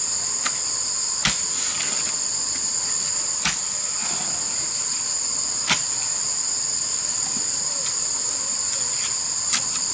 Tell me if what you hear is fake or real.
real